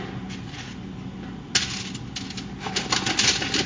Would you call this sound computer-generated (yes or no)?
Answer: no